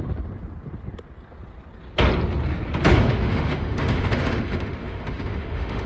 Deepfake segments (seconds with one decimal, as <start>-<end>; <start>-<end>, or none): 2.9-5.9